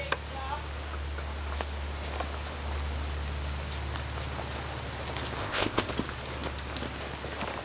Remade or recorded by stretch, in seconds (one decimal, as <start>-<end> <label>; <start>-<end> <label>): 0.0-5.4 recorded; 5.4-5.9 remade; 5.9-7.6 recorded